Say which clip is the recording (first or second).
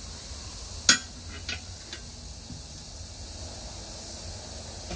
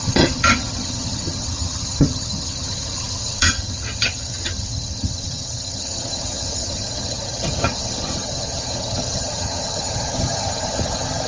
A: first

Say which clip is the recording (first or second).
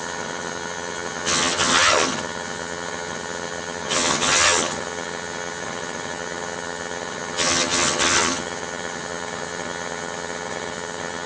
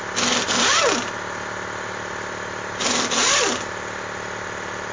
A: second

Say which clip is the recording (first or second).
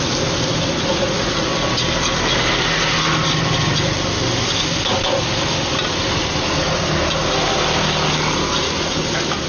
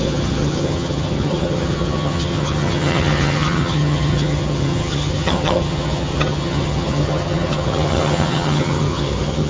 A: first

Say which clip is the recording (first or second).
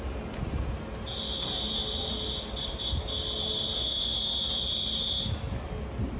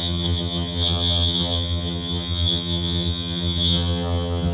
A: first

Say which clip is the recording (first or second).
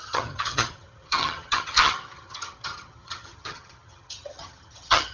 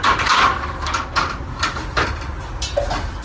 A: second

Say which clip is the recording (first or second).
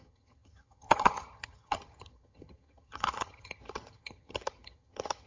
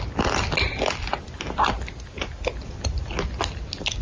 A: second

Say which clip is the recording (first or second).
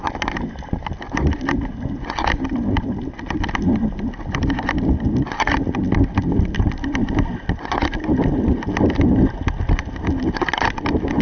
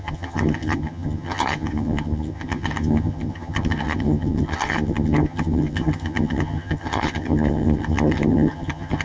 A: first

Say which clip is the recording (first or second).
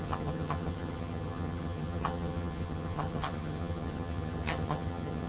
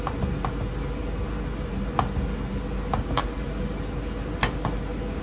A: second